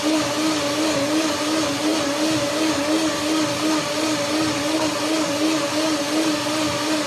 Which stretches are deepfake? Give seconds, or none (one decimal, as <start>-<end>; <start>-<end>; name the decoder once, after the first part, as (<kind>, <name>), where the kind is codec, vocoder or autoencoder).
none